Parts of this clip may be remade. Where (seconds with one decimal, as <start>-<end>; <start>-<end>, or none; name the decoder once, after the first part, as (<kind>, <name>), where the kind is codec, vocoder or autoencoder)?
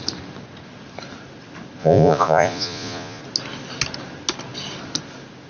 1.8-3.2 (vocoder, Vocos)